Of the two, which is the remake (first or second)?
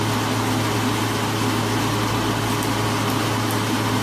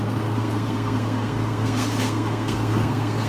second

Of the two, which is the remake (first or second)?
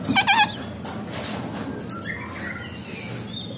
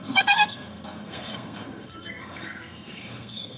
second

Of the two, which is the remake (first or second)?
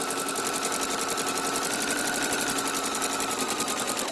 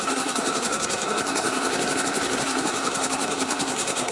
second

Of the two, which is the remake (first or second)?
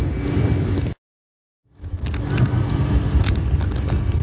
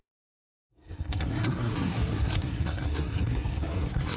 second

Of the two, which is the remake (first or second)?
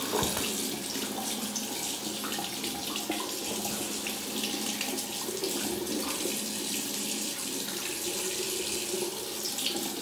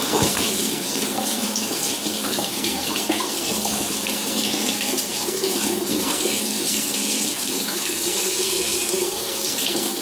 second